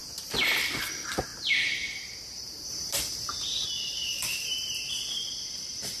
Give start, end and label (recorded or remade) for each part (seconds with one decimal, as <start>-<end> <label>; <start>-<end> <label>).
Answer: 0.0-0.6 remade; 0.6-1.3 recorded; 1.3-4.9 remade; 4.9-6.0 recorded